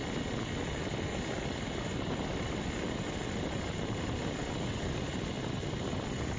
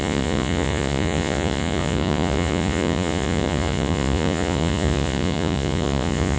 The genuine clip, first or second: first